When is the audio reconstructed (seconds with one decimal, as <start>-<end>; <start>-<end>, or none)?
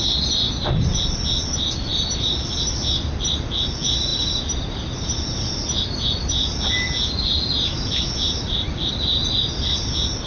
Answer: none